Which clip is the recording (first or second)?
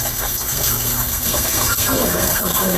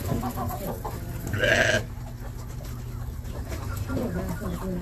second